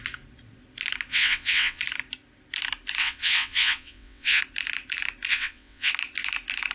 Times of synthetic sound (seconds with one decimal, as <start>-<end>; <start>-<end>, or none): 1.1-1.8; 3.0-4.4; 5.3-5.9